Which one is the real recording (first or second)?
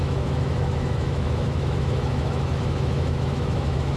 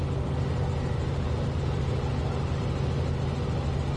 second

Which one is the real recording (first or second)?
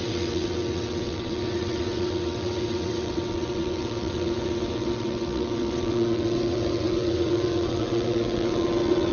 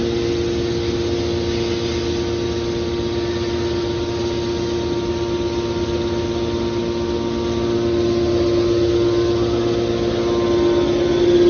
second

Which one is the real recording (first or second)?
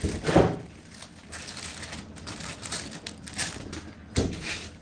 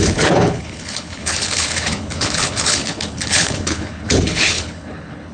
first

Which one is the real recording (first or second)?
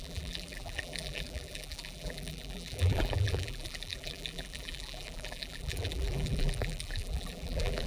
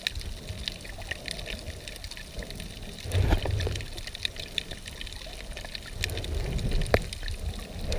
second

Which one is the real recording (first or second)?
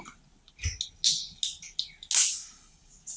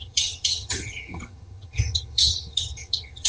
first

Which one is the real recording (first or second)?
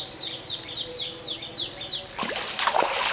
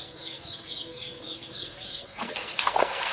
first